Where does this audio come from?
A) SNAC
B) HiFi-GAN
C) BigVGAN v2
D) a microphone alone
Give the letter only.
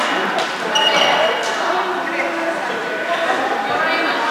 D